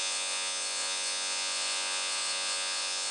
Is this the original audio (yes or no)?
no